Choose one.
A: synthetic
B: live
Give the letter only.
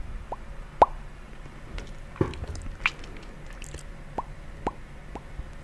B